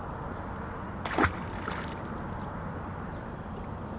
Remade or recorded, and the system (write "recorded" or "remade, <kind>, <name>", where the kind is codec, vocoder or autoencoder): recorded